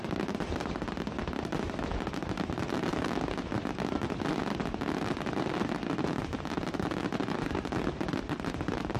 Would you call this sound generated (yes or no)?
no